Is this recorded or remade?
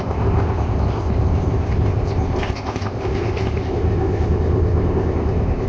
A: remade